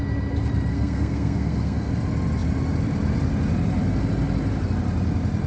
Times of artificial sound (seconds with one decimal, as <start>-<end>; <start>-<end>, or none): 0.7-1.9